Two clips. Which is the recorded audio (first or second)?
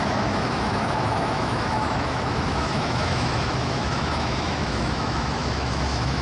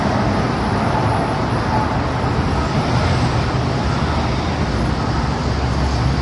second